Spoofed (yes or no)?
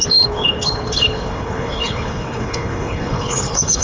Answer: yes